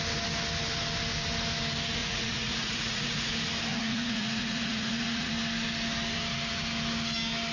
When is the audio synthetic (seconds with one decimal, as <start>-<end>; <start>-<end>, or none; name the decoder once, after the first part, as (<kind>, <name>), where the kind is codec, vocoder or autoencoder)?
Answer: 2.0-3.3 (vocoder, Vocos); 3.7-5.3